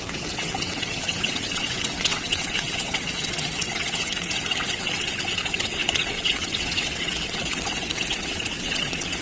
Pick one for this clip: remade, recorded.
remade